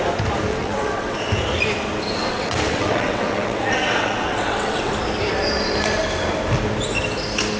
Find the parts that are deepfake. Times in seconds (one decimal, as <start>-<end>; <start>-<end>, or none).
0.5-1.2; 2.2-4.9